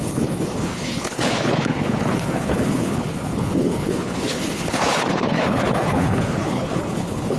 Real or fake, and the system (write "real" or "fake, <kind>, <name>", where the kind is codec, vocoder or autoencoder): fake, codec, HILCodec